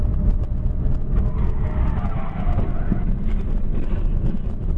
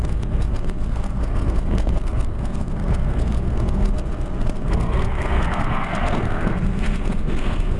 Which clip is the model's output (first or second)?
second